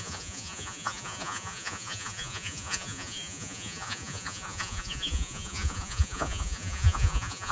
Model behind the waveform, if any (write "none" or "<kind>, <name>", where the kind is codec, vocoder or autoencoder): vocoder, Vocos